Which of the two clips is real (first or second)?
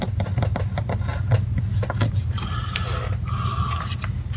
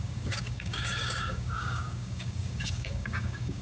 first